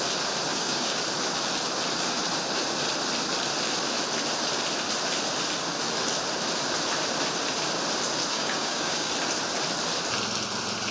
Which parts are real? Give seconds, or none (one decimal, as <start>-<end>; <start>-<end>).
0.0-0.5; 1.0-8.3; 9.1-10.9